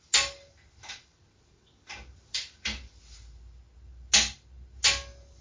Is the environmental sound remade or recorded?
recorded